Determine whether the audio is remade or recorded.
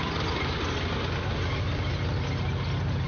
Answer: recorded